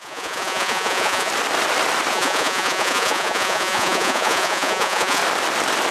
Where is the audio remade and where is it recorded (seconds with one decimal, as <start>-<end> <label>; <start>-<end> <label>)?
0.0-1.3 remade; 1.3-2.1 recorded; 2.1-5.2 remade; 5.2-5.9 recorded